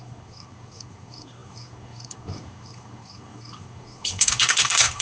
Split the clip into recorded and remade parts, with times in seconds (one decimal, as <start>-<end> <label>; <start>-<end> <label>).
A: 0.0-5.0 remade